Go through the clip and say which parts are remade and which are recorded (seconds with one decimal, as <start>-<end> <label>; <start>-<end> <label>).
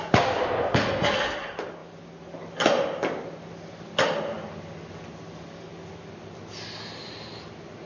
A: 0.0-7.9 recorded